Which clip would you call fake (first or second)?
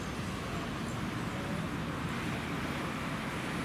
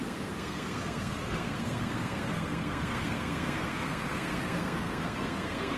second